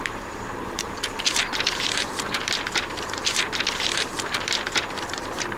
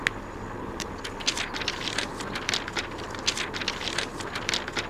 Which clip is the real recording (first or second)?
second